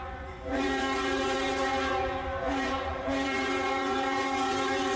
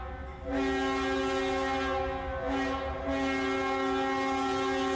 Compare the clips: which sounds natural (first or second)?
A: second